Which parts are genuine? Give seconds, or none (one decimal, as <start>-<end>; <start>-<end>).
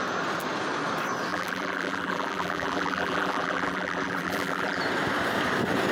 0.0-1.3; 4.8-5.9